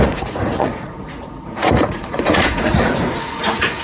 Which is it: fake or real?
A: fake